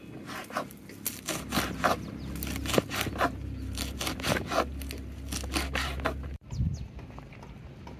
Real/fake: real